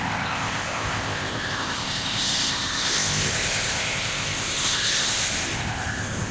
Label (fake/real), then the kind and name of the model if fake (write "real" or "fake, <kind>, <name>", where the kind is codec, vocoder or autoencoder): fake, codec, ZipCodec